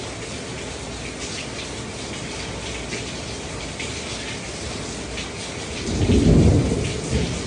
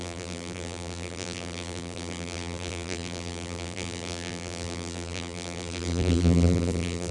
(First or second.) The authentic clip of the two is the first